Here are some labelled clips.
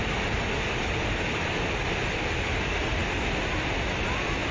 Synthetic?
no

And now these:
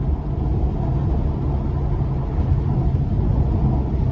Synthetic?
no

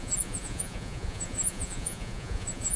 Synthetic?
yes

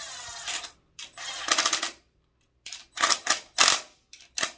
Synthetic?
no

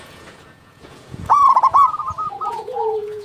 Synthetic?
yes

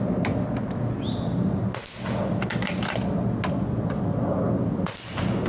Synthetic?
no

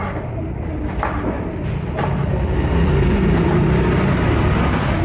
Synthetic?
no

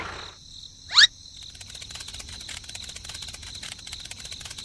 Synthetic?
no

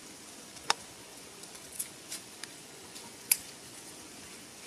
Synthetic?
yes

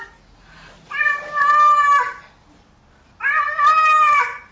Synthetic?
no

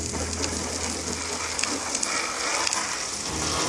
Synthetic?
no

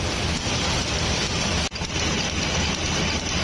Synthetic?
no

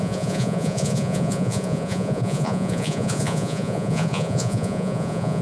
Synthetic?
yes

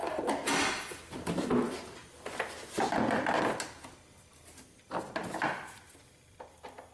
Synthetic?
no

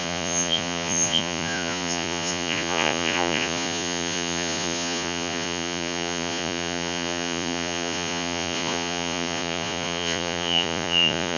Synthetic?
yes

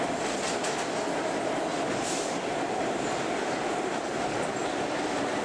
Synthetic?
no